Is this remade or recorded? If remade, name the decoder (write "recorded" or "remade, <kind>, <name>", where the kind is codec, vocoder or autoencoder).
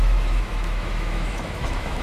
remade, autoencoder, DAC-VAE